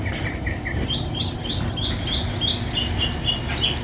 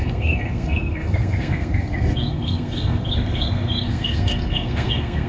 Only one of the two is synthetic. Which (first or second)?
second